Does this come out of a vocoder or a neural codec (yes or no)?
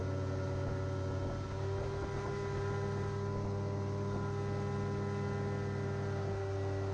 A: no